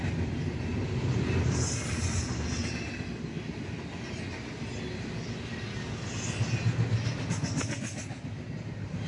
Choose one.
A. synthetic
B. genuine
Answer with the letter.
B